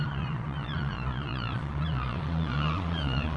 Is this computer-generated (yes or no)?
yes